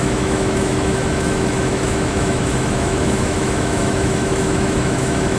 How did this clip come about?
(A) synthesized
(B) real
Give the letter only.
A